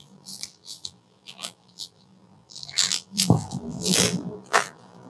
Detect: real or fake fake